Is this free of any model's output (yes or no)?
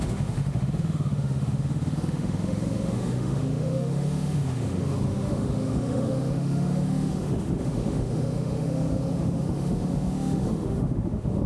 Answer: no